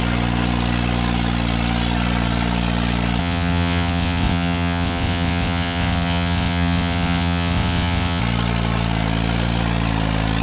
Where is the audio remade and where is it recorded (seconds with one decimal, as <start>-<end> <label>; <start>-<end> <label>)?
0.0-3.2 recorded; 3.2-8.2 remade; 8.2-10.4 recorded